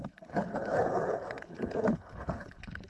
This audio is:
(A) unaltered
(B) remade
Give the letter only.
B